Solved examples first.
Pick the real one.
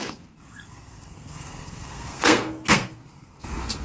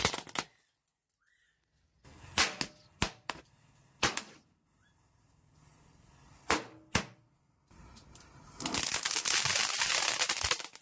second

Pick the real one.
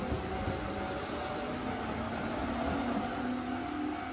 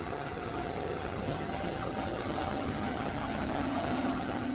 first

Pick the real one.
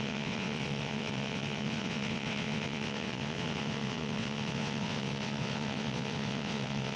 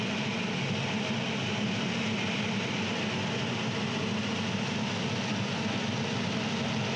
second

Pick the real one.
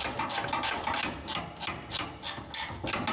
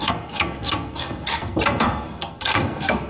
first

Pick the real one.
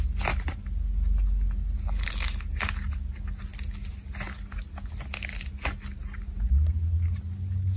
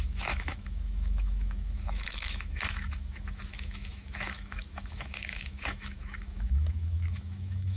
first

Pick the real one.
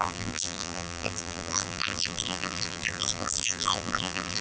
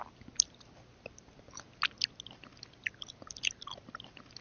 second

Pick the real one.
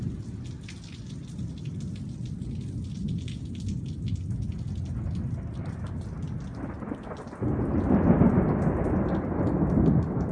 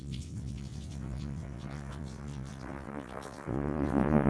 first